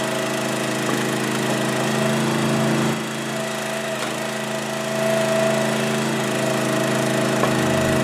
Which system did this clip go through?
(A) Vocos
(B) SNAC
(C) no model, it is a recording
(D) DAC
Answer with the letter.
C